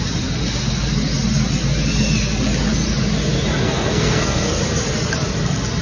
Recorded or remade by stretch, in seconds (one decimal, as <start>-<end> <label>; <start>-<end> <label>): 0.0-3.6 recorded; 3.6-4.6 remade; 4.6-5.8 recorded